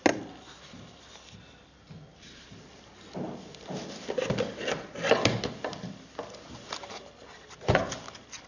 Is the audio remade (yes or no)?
no